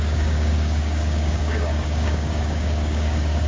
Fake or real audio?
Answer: fake